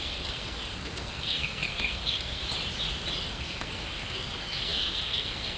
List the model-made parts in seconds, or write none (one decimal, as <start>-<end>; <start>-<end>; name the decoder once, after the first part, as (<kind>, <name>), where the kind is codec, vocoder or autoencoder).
0.0-2.4 (codec, SNAC); 3.2-5.6